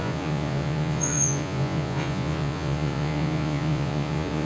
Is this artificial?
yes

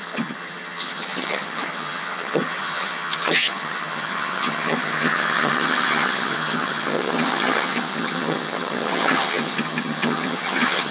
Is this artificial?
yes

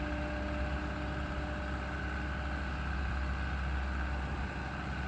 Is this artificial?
no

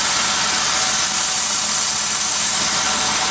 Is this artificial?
no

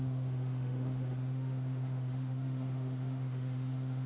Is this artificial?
yes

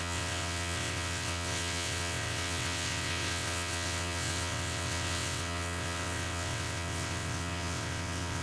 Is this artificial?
yes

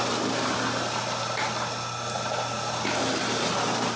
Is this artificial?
no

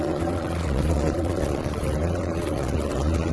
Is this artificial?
yes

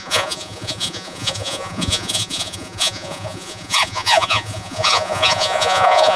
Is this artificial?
yes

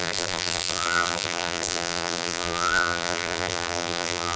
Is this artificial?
yes